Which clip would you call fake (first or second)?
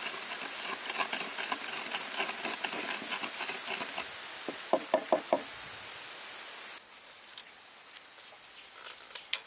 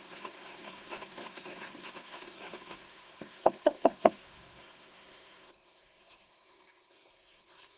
second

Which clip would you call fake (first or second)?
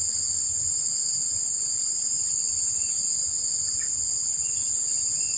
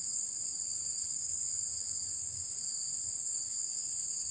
second